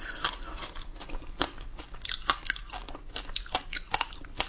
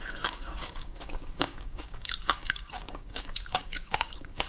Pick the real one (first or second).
first